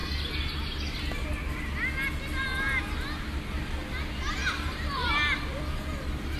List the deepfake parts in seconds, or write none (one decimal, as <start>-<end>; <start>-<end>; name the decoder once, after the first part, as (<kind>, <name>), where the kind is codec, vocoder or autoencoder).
4.4-5.6 (vocoder, BigVGAN v2)